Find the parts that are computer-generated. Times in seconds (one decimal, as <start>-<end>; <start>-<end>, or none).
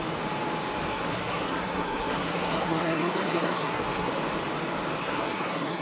0.9-4.1; 5.0-5.8